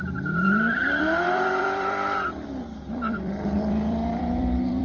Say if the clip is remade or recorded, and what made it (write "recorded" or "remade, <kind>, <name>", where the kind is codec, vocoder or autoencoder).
remade, vocoder, BigVGAN v2